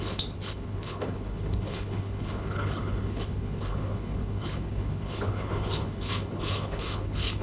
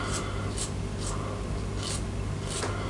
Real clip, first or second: second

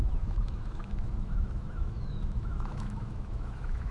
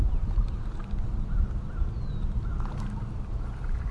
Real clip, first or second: second